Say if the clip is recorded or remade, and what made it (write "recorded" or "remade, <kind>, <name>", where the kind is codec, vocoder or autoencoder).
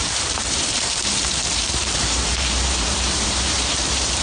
remade, vocoder, BigVGAN v2